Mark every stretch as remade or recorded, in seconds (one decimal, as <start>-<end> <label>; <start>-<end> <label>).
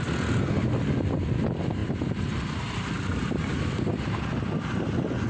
0.0-5.3 recorded